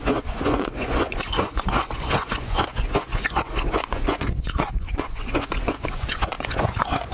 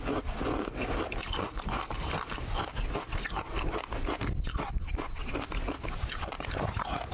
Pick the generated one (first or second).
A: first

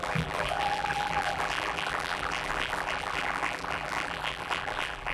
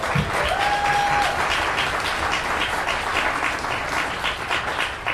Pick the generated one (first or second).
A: first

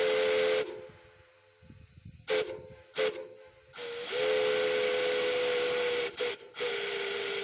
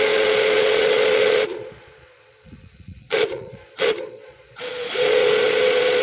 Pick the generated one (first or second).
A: second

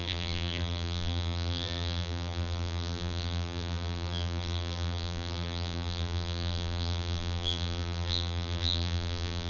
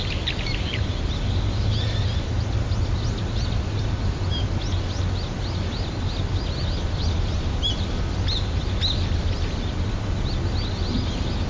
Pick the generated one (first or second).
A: first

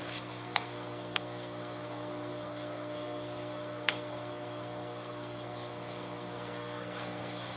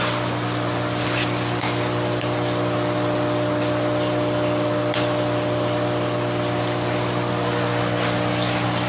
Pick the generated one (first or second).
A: first